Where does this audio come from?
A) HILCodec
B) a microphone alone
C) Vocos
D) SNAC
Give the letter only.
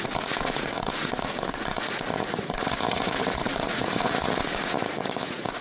C